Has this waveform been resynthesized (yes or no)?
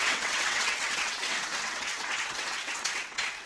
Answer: yes